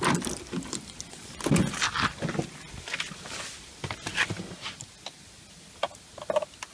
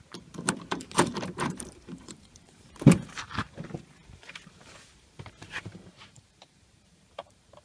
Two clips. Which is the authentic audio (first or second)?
first